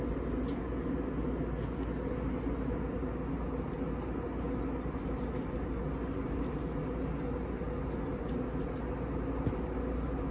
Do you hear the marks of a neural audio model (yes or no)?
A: no